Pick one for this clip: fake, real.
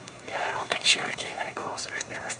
fake